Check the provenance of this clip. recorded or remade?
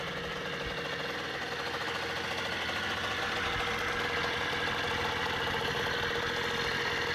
recorded